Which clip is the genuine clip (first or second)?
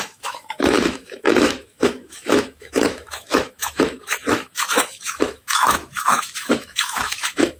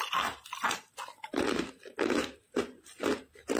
second